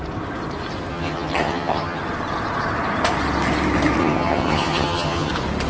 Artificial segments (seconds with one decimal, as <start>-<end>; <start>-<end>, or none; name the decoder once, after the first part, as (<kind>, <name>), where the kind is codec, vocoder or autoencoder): 0.9-2.0 (vocoder, HiFi-GAN); 4.0-5.3